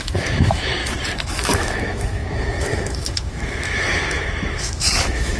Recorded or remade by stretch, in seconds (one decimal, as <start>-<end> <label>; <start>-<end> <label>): 0.0-0.8 remade; 0.8-1.3 recorded; 1.3-5.4 remade